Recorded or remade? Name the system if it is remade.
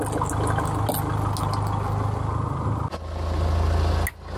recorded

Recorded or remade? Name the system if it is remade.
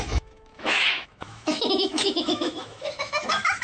remade, autoencoder, DAC-VAE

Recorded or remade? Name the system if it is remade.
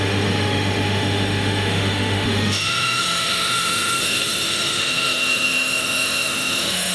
remade, autoencoder, DAC-VAE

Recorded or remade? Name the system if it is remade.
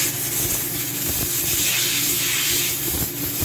recorded